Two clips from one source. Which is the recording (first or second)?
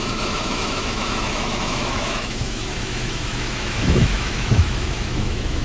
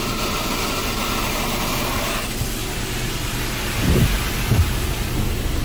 second